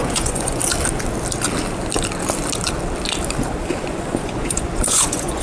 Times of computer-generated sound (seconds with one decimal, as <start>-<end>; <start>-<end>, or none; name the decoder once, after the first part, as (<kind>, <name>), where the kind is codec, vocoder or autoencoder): 0.0-0.6 (vocoder, Vocos); 3.8-5.4